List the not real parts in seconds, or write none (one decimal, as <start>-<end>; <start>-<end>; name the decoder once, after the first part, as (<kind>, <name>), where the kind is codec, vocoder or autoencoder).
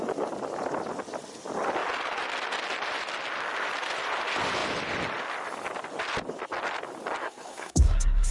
7.2-8.3 (codec, SNAC)